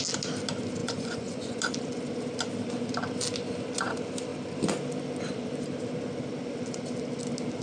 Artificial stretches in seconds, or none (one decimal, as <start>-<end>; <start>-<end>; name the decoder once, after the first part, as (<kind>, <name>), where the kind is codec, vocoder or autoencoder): 0.8-1.6 (vocoder, Vocos)